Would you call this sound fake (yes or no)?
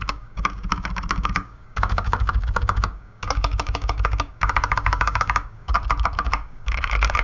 yes